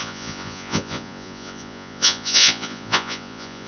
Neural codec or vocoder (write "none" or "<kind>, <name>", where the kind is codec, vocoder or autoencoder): vocoder, Vocos